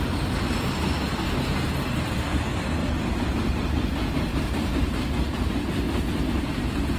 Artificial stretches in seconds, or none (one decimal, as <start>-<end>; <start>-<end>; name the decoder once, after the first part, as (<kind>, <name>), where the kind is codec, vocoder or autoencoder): 2.8-5.5 (vocoder, BigVGAN v2)

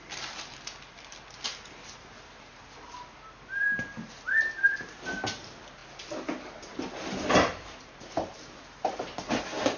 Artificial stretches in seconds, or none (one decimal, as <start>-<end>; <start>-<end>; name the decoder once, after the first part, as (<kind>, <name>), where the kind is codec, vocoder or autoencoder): none